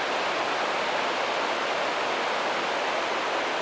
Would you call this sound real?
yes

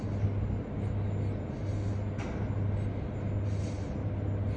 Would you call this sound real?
yes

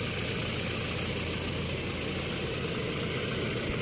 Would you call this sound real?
yes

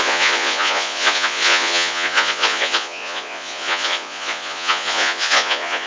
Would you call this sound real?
no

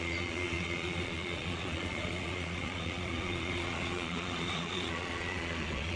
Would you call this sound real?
no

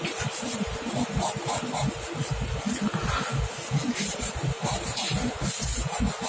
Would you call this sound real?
yes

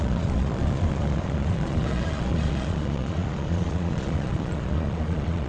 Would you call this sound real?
no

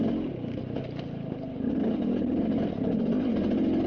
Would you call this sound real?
yes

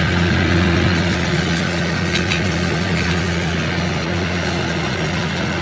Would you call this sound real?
no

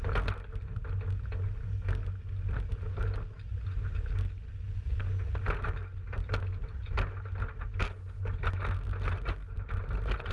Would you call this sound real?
yes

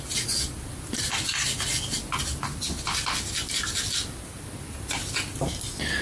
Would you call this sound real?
yes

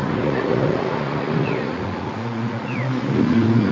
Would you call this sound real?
no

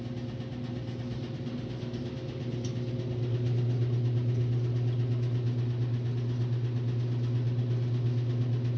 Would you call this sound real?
yes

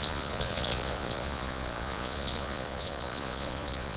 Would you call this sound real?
no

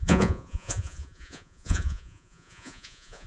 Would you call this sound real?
no